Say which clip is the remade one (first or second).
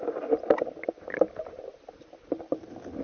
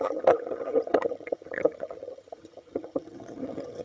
second